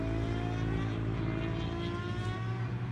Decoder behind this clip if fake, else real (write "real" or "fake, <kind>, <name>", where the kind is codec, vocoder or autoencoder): real